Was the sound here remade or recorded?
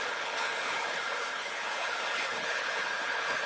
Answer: remade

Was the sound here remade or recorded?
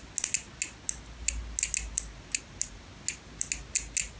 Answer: recorded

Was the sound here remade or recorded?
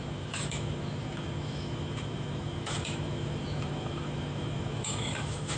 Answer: remade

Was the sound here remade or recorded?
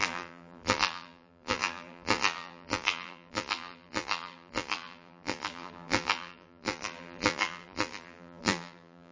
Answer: remade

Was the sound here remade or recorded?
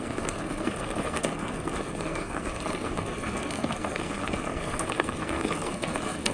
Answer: remade